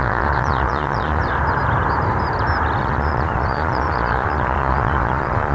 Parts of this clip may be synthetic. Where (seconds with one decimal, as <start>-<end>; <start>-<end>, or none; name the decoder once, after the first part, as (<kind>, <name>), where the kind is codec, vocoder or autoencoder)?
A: 0.0-1.2 (vocoder, Vocos); 2.8-5.5